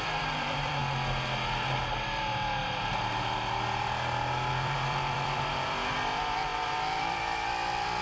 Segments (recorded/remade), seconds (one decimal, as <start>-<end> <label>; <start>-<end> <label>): 0.0-0.8 remade; 0.8-4.5 recorded; 4.5-6.5 remade; 6.5-7.1 recorded; 7.1-8.0 remade